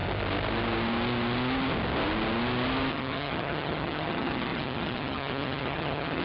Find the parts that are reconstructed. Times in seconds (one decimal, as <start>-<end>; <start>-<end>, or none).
2.9-6.2